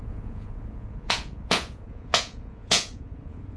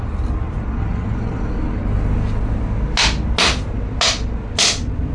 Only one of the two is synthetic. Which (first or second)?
first